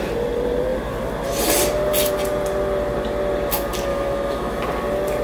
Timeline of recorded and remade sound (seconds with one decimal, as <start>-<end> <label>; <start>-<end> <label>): 0.0-3.9 recorded; 3.9-4.6 remade; 4.6-5.2 recorded

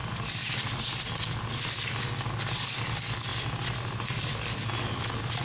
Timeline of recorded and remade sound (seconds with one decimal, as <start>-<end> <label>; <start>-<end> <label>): 0.0-5.4 recorded

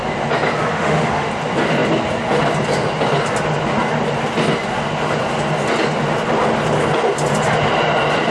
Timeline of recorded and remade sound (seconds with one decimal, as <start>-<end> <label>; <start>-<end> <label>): 0.0-0.7 recorded; 0.7-1.3 remade; 1.3-8.3 recorded

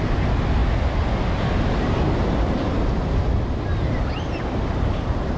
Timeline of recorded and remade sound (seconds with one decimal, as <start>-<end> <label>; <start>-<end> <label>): 0.0-5.4 recorded

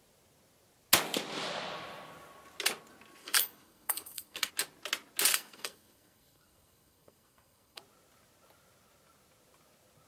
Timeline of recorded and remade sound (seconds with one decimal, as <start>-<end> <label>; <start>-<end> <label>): 0.0-3.2 recorded; 3.2-4.5 remade; 4.5-5.3 recorded; 5.3-7.8 remade; 7.8-10.1 recorded